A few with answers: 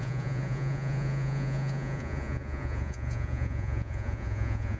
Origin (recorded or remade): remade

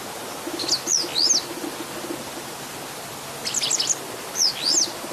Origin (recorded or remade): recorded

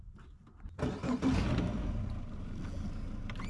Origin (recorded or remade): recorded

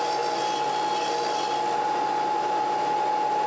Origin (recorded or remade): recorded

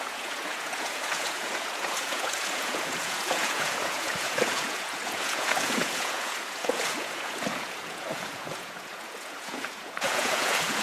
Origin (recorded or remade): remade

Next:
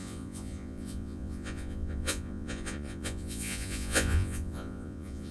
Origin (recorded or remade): remade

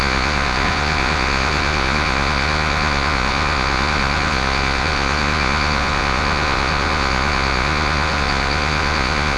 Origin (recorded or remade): remade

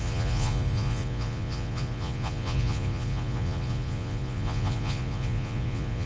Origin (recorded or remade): remade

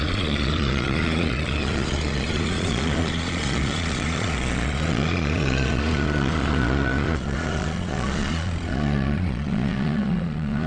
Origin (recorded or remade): remade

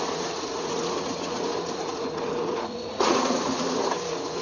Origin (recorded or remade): remade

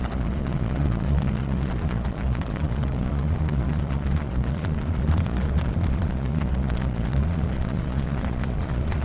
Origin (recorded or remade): remade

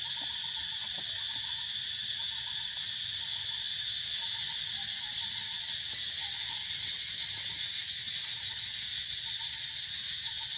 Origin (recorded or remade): recorded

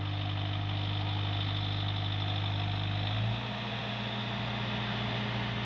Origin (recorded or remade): recorded